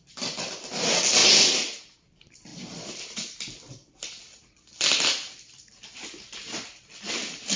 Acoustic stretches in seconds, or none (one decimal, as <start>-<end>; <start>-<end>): 0.0-1.2; 1.8-7.6